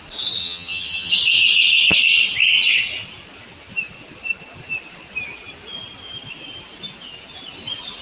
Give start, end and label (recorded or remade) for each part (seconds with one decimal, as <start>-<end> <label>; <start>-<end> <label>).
0.0-0.4 recorded; 0.4-1.1 remade; 1.1-8.0 recorded